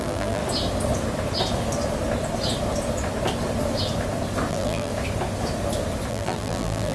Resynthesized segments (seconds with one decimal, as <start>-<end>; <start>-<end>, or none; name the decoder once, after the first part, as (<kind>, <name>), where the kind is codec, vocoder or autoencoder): 0.0-0.4 (vocoder, BigVGAN v2); 4.5-4.9; 6.1-6.9